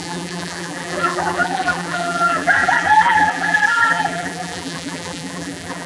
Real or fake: fake